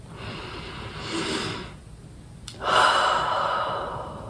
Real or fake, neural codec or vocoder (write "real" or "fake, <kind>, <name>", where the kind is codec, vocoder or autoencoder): real